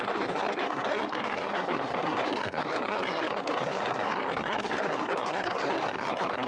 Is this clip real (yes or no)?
no